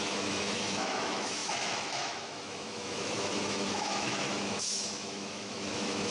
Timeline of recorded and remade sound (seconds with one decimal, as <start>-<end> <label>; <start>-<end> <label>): 0.0-6.1 remade